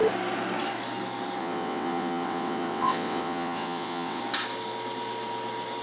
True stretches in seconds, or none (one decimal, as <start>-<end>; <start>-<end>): 0.0-1.4; 4.2-5.8

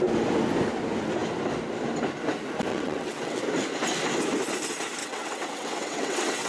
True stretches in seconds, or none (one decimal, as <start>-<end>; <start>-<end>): 0.0-2.7; 3.4-5.0

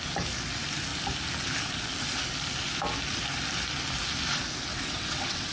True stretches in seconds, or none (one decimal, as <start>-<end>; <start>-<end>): 0.0-4.7

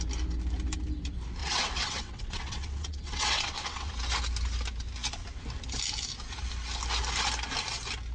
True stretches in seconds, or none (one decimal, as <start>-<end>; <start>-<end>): 0.0-1.4; 3.9-8.1

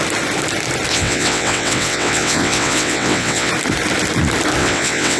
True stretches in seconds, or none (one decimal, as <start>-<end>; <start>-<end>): 0.0-0.9; 3.5-4.6

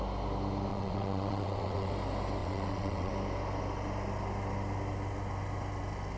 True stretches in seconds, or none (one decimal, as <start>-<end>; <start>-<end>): 0.0-0.7; 1.9-2.4; 3.1-6.2